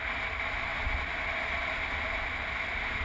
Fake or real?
real